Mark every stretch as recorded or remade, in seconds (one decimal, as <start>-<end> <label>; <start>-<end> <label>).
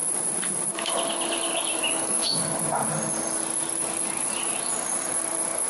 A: 0.0-1.9 recorded; 1.9-2.4 remade; 2.4-5.7 recorded